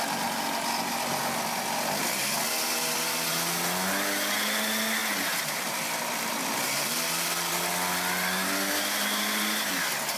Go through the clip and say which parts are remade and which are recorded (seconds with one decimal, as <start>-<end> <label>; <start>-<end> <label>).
0.0-5.0 recorded; 5.0-7.5 remade; 7.5-10.2 recorded